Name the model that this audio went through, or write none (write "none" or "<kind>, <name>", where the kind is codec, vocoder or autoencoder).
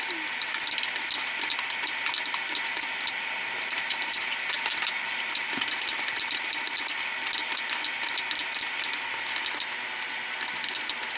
none